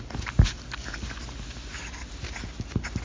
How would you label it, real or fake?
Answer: real